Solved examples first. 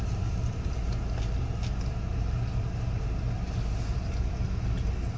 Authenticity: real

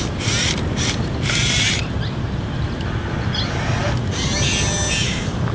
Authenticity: fake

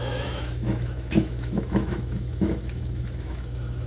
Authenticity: fake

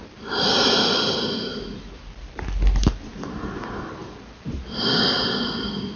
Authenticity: real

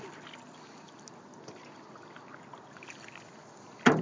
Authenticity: real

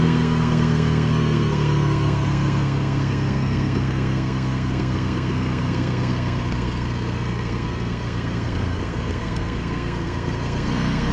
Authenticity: fake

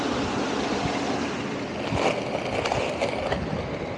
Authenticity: real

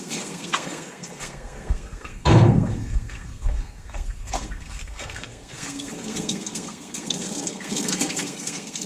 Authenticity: fake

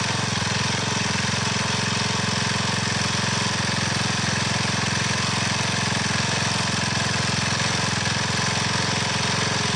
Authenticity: real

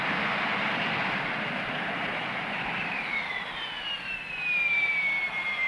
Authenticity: real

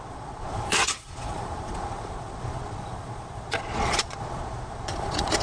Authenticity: fake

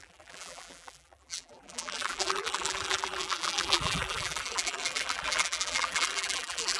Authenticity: fake